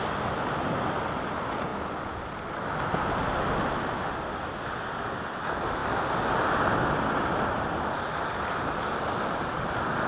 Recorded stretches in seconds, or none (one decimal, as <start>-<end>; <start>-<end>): 0.0-10.1